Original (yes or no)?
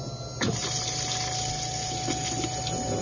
yes